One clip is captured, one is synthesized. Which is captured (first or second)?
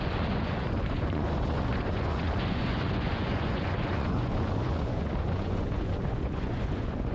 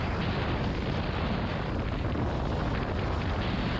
second